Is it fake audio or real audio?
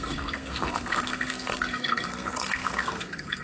fake